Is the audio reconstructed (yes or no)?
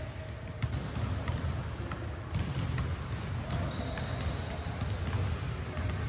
no